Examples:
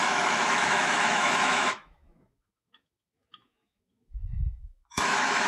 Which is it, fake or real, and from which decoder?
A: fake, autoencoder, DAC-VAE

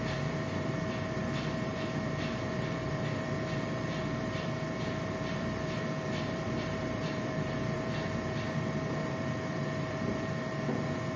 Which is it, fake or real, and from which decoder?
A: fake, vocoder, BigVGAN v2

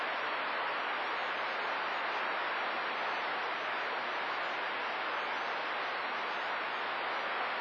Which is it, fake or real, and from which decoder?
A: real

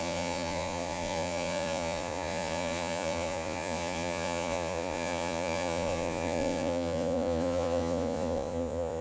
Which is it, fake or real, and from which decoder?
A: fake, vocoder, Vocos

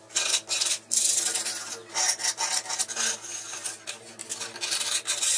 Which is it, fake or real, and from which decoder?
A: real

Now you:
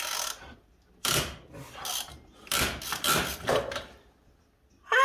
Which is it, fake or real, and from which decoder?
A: real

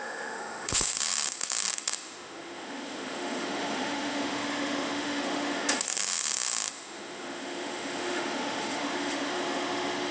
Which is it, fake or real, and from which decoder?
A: fake, autoencoder, DAC-VAE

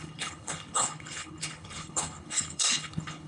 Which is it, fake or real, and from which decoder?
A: fake, codec, HILCodec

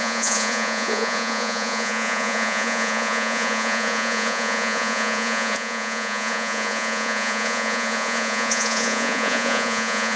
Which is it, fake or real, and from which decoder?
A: fake, vocoder, Vocos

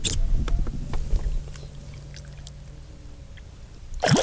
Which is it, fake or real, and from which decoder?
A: real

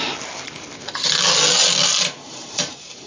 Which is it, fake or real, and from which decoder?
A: real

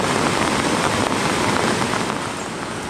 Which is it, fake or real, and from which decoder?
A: real